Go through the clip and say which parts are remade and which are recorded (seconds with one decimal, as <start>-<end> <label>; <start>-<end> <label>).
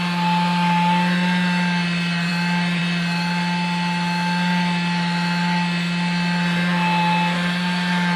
0.0-8.2 recorded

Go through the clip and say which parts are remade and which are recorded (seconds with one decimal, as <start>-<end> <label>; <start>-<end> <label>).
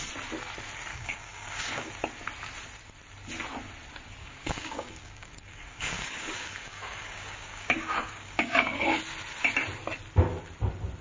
0.0-0.9 recorded; 0.9-1.9 remade; 1.9-4.2 recorded; 4.2-9.0 remade; 9.0-11.0 recorded